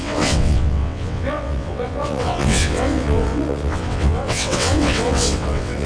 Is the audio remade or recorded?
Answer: remade